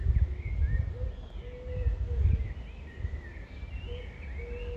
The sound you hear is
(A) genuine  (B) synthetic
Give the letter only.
A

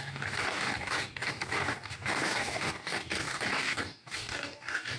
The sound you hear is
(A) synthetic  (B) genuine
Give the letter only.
A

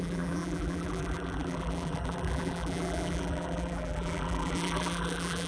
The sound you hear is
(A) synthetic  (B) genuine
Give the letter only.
A